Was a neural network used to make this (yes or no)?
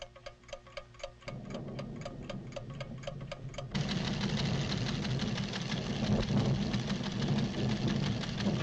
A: no